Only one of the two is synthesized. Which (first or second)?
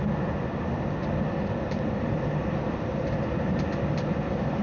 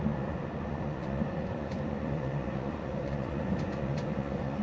second